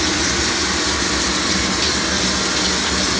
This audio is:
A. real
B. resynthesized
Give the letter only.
A